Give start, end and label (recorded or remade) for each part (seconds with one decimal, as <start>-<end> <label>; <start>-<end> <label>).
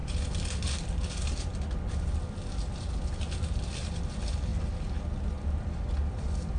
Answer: 0.0-6.6 recorded